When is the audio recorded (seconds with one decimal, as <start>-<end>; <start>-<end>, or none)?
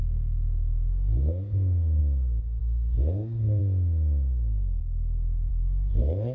2.0-2.6; 3.6-5.5